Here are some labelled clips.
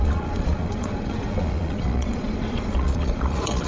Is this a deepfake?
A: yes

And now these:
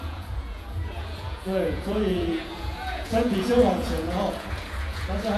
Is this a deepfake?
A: yes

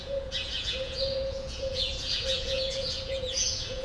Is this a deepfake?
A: yes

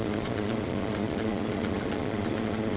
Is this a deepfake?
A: yes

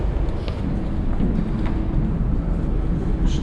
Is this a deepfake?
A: no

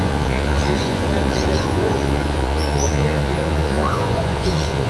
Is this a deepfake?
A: yes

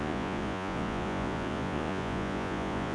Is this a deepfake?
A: yes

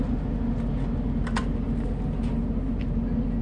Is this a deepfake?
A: no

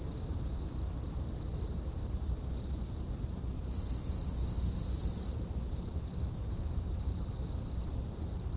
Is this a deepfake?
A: no